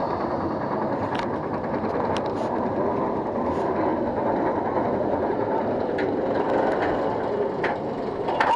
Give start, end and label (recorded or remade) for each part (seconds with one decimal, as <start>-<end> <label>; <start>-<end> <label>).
0.0-8.6 recorded